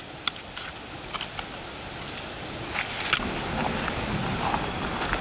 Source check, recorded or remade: recorded